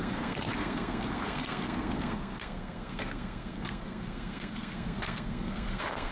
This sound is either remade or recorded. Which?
remade